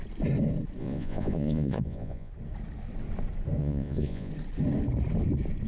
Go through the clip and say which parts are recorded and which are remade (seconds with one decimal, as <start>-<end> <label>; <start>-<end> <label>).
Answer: 0.0-0.8 recorded; 0.8-2.3 remade; 2.3-3.6 recorded; 3.6-4.3 remade; 4.3-5.7 recorded